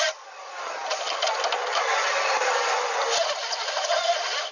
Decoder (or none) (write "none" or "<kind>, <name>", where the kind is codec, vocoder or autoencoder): none